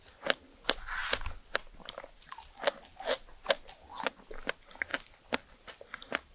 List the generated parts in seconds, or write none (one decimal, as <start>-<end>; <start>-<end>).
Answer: none